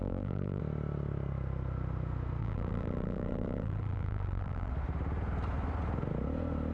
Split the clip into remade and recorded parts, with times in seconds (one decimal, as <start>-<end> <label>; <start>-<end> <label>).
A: 0.0-0.6 remade; 0.6-2.4 recorded; 2.4-4.7 remade; 4.7-6.7 recorded